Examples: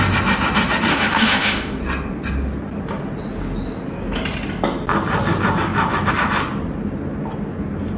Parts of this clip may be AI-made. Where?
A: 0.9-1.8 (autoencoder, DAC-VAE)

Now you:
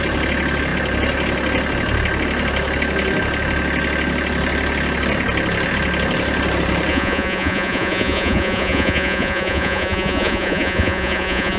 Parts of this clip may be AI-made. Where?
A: 6.9-11.6 (vocoder, Vocos)

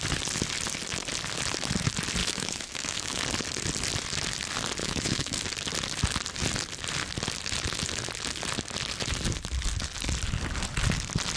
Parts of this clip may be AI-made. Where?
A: 2.2-3.2 (autoencoder, DAC-VAE); 4.8-5.4